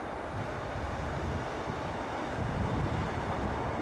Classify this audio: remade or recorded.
recorded